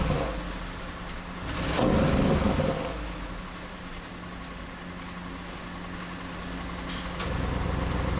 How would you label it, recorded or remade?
recorded